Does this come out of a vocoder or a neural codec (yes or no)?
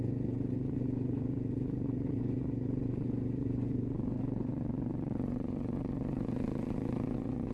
yes